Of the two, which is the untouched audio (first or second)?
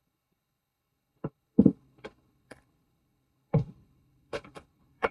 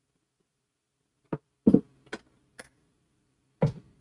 second